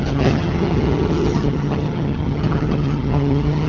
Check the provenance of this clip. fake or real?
fake